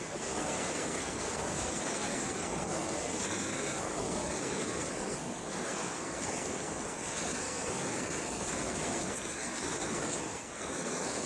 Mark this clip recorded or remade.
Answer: remade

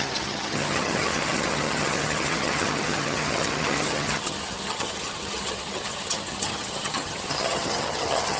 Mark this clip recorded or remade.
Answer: remade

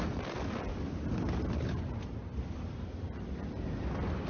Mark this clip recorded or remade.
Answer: remade